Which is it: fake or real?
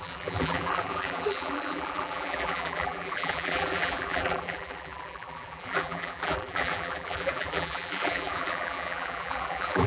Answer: fake